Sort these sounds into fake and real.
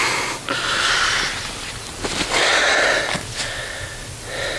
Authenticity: real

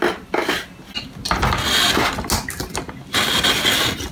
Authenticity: real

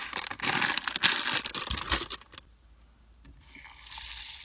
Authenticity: real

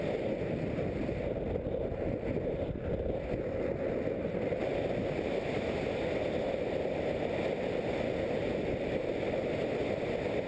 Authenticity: real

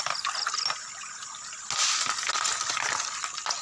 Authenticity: real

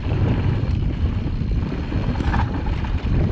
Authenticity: fake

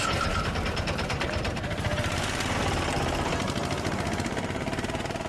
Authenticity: fake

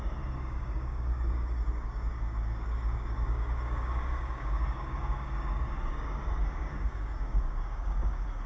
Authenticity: fake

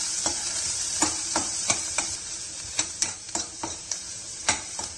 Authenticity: fake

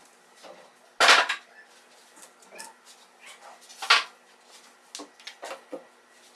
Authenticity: real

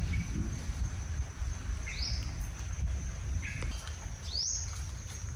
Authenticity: fake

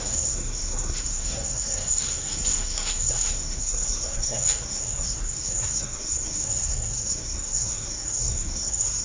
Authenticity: fake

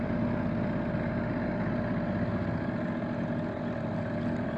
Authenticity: real